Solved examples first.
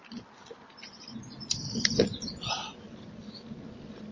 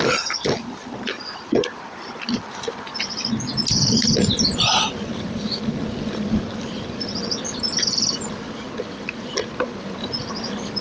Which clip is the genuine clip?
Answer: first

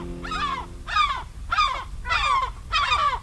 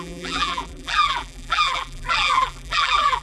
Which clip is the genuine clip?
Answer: first